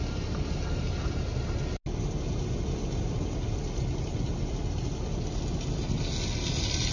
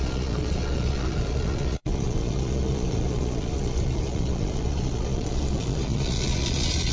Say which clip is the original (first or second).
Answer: first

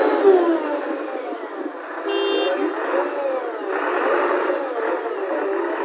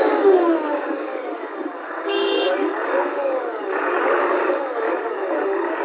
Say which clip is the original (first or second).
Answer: first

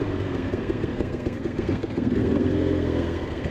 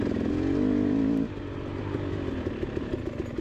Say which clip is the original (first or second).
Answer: second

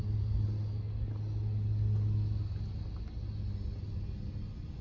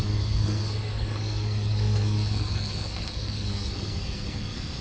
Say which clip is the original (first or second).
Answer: first